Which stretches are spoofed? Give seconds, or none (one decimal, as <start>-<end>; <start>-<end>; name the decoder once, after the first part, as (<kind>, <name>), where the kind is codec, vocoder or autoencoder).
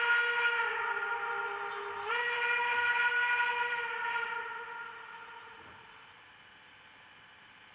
none